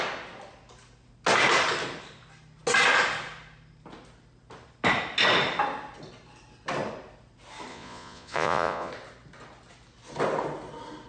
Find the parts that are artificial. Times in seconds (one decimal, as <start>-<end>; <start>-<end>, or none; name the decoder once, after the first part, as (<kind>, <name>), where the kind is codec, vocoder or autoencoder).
7.7-8.9 (vocoder, Vocos)